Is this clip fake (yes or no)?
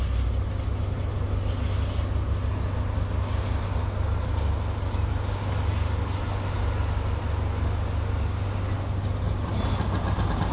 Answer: no